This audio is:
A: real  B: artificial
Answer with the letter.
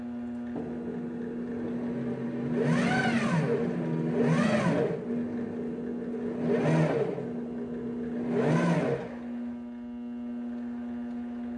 A